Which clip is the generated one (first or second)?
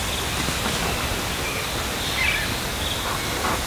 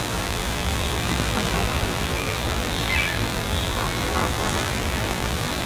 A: second